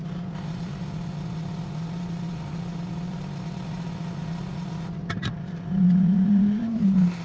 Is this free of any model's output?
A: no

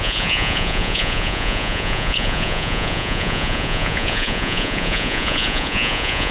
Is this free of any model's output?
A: no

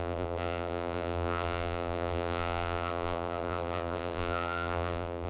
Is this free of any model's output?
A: no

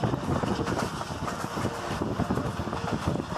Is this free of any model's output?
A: yes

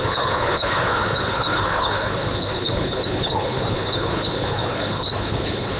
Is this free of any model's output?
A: no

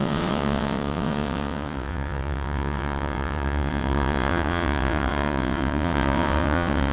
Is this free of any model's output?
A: no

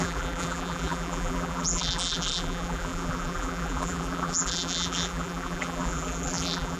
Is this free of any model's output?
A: no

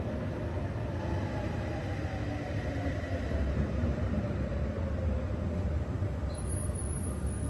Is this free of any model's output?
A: yes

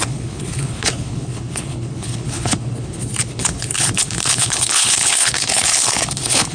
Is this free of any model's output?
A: no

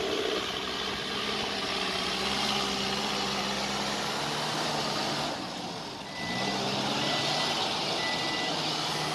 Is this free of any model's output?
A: yes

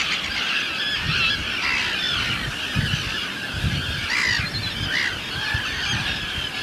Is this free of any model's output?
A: yes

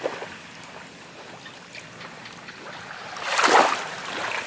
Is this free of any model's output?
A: yes